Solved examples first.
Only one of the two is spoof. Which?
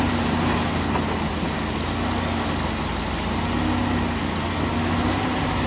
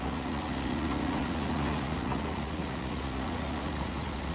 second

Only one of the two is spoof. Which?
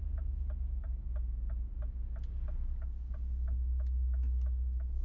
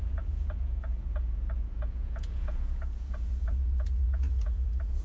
second